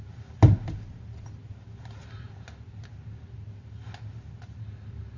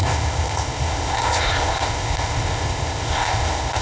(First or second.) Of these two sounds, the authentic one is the first